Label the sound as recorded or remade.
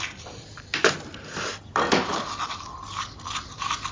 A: recorded